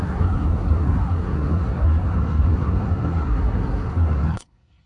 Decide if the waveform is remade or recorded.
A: remade